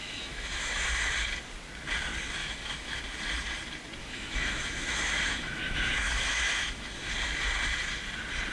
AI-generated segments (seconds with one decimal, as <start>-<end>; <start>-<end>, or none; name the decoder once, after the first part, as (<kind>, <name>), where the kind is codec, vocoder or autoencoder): 0.0-0.9 (autoencoder, DAC-VAE); 2.4-3.0; 4.0-7.1